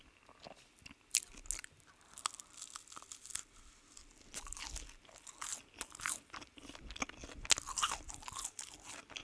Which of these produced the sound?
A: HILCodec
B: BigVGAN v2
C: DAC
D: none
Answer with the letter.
D